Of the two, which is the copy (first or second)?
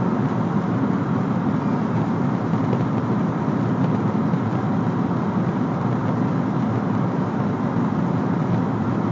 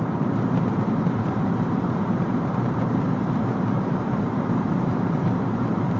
second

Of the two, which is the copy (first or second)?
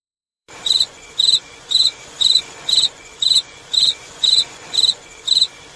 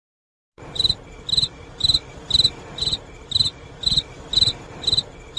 first